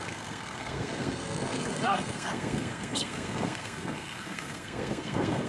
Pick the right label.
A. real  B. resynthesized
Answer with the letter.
B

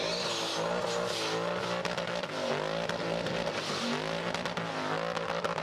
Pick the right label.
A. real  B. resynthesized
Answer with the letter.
A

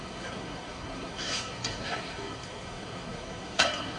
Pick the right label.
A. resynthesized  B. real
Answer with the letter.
A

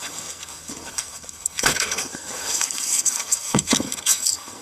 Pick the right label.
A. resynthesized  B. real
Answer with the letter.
A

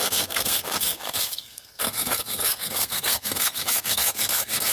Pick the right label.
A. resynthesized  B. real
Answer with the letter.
A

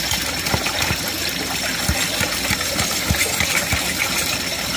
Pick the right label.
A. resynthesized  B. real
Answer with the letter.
B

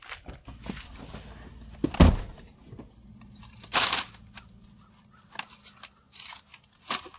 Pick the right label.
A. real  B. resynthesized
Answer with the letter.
A